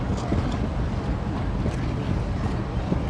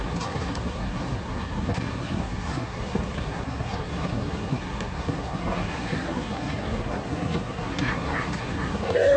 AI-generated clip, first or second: second